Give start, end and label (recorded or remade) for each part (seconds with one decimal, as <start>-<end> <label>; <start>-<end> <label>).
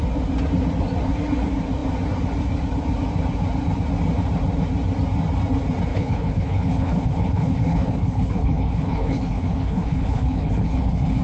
0.0-5.9 recorded; 5.9-11.2 remade